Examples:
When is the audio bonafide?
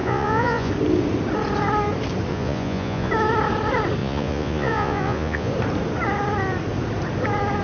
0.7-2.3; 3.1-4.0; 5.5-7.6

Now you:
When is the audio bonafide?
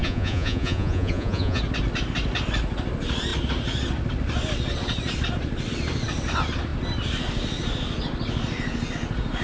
1.6-9.4